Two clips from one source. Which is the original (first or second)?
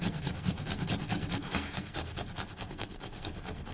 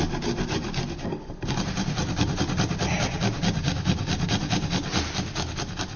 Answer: second